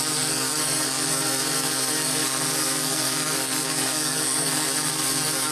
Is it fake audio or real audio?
fake